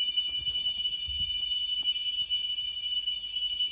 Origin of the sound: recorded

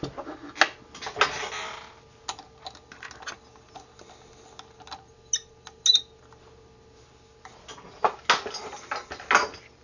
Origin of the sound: recorded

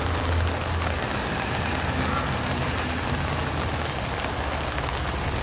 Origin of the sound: recorded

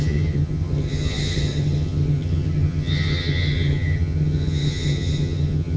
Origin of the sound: remade